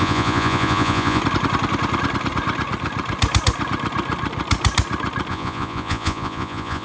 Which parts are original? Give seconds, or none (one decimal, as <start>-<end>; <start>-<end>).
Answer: 1.2-5.3